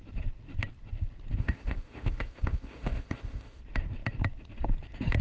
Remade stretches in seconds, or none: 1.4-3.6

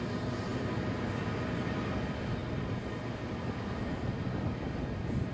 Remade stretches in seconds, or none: none

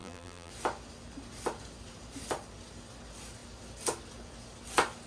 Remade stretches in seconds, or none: 0.0-0.5

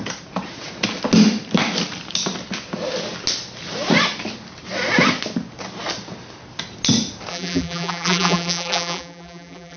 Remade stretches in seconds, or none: 7.3-9.8

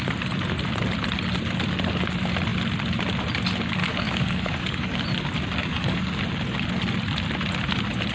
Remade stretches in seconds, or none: 3.8-5.0; 5.6-6.2

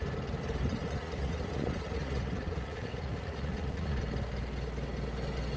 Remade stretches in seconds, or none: 0.7-4.0

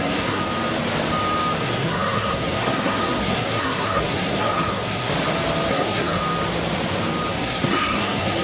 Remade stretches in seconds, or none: 0.0-0.4; 1.6-5.1; 5.7-6.2; 7.3-8.4